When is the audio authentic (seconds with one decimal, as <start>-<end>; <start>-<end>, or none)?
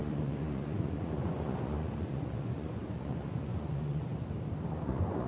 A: 4.1-4.7